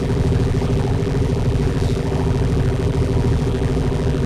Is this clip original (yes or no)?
no